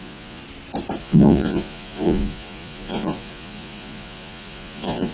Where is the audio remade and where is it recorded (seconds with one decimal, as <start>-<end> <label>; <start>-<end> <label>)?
0.0-0.4 remade; 0.4-1.0 recorded; 1.0-5.1 remade